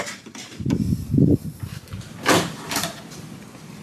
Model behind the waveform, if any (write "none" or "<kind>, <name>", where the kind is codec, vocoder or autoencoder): vocoder, BigVGAN v2